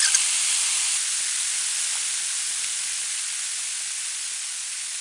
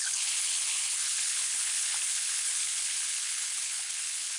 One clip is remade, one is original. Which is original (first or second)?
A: first